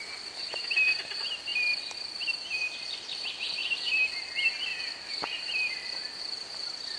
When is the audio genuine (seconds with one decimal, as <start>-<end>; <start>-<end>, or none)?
0.0-4.7; 5.4-7.0